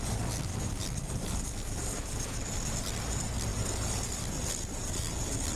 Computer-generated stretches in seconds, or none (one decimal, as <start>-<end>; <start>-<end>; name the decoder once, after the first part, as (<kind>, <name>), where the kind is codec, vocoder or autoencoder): 0.5-1.4 (vocoder, BigVGAN v2)